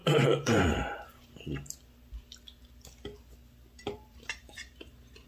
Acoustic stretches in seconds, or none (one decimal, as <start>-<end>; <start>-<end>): 1.3-3.8; 4.6-5.3